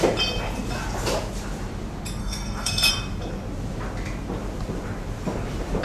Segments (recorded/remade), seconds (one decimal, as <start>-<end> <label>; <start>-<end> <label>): 0.0-2.2 recorded; 2.2-2.9 remade; 2.9-5.8 recorded